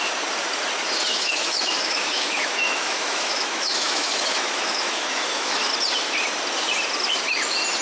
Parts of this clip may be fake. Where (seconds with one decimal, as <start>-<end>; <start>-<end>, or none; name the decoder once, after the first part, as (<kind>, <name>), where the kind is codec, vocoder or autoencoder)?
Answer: 1.1-5.7 (autoencoder, DAC-VAE)